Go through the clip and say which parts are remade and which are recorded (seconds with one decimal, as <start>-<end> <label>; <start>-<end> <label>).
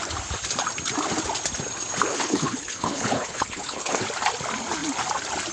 0.0-2.1 recorded; 2.1-4.0 remade; 4.0-5.5 recorded